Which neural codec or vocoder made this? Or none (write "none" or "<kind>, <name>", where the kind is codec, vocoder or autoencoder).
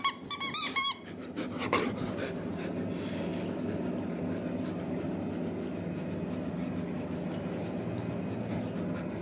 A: none